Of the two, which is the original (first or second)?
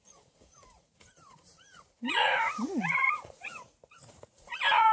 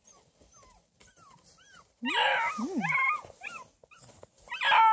second